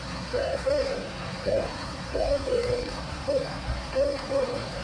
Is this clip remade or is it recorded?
remade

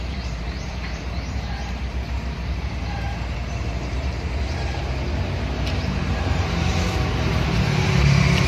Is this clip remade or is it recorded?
remade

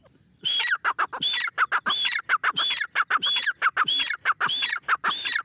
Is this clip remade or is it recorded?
recorded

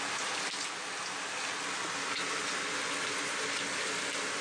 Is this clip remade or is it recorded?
recorded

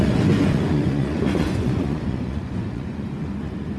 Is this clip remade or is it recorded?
remade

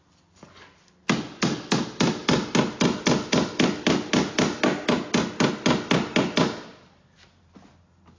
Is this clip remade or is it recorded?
recorded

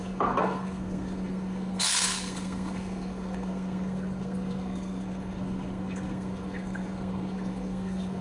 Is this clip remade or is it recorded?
remade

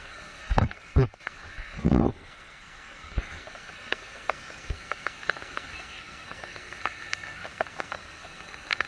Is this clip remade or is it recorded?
remade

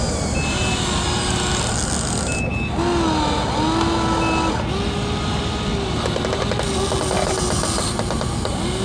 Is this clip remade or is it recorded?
recorded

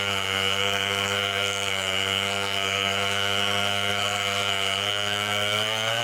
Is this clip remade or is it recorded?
remade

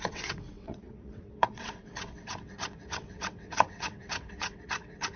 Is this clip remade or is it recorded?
remade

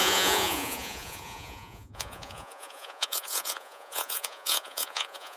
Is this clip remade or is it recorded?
remade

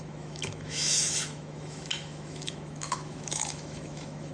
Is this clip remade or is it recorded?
remade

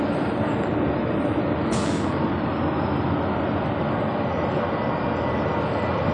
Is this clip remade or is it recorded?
recorded